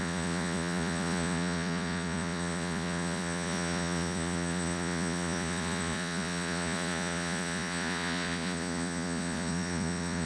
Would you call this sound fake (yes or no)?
yes